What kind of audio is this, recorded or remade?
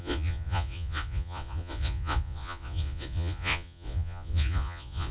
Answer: remade